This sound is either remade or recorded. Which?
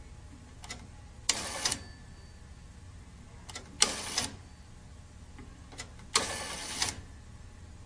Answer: recorded